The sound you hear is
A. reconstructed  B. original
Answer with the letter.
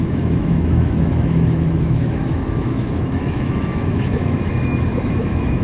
A